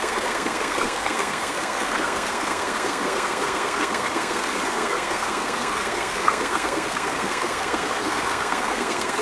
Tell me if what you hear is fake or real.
fake